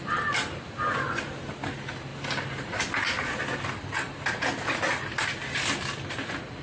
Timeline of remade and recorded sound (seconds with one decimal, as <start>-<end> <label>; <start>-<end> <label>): 0.0-6.6 recorded